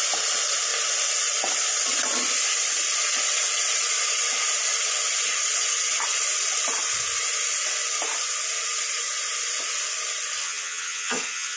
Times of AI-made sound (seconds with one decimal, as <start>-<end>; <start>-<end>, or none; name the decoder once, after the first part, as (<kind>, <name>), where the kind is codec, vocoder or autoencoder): 10.4-11.6 (vocoder, HiFi-GAN)